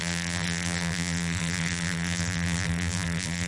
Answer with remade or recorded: remade